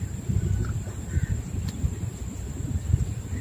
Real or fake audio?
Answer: real